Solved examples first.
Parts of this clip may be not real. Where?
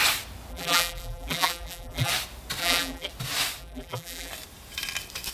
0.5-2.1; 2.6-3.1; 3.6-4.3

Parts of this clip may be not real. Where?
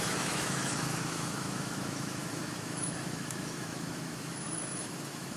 0.0-5.4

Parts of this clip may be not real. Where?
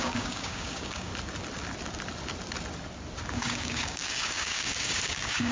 0.0-1.1; 3.3-5.5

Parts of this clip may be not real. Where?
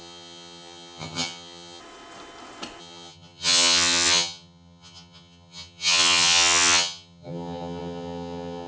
0.0-1.8; 2.8-8.7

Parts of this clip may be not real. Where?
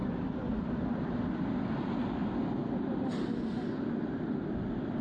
none